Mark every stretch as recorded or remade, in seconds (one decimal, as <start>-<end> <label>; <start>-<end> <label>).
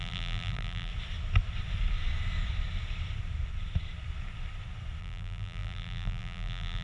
0.0-0.9 remade; 0.9-5.0 recorded; 5.0-6.8 remade